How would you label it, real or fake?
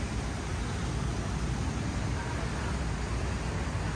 real